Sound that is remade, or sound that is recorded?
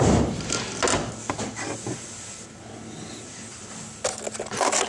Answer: recorded